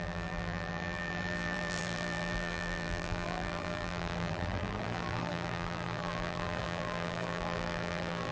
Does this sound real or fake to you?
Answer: fake